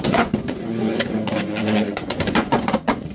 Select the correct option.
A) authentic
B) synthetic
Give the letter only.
B